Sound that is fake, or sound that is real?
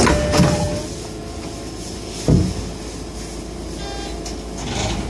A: real